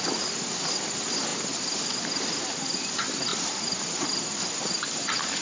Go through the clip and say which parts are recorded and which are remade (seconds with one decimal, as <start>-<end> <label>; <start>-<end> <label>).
0.0-3.3 recorded; 3.3-3.9 remade; 3.9-5.4 recorded